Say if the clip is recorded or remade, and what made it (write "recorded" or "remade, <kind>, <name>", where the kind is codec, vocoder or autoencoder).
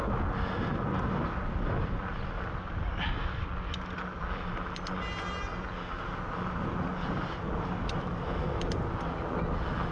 recorded